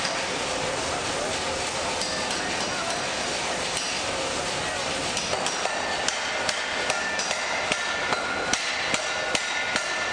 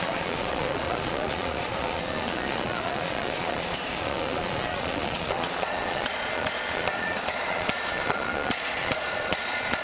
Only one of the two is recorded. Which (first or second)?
first